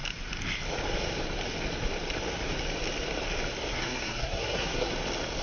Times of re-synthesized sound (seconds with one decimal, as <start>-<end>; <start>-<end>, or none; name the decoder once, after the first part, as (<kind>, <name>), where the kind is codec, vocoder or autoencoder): 3.7-4.9 (codec, SNAC)